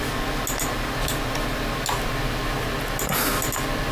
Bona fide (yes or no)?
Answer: yes